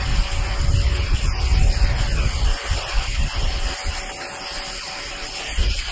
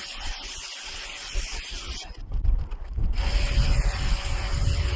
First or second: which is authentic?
first